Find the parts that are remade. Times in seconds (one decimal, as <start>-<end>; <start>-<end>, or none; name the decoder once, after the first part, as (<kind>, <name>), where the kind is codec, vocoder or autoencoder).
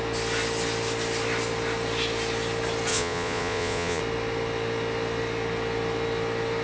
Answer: 2.9-4.0 (vocoder, Vocos)